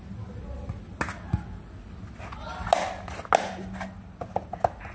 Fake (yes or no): no